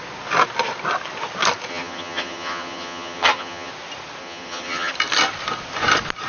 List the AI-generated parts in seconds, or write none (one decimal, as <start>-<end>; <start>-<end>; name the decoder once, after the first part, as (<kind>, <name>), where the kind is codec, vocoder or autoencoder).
1.7-3.7 (vocoder, HiFi-GAN); 4.2-4.9